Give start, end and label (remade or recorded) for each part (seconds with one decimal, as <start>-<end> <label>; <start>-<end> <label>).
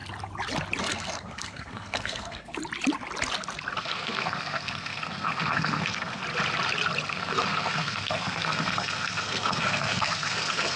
0.0-0.8 recorded; 0.8-2.6 remade; 2.6-3.8 recorded; 3.8-6.2 remade; 6.2-7.1 recorded; 7.1-10.8 remade